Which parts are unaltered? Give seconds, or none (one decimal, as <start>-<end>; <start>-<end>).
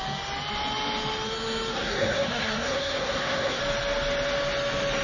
0.0-1.7; 3.6-5.0